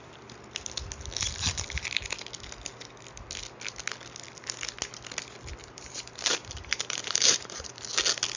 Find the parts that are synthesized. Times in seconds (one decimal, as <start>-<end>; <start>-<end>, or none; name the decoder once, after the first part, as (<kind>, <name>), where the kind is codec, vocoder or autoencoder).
5.6-7.8 (vocoder, BigVGAN v2)